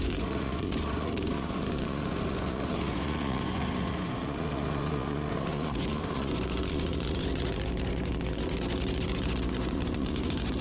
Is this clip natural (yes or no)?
no